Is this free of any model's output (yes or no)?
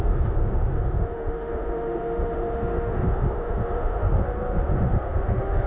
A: no